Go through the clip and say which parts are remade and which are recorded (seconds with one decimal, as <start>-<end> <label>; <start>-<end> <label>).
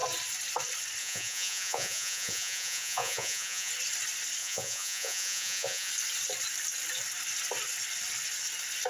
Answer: 0.0-1.0 recorded; 1.0-3.7 remade; 3.7-4.4 recorded; 4.4-5.9 remade; 5.9-8.9 recorded